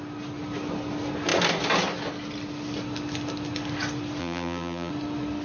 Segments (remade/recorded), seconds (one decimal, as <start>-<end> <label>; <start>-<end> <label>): 0.0-4.2 recorded; 4.2-4.9 remade; 4.9-5.4 recorded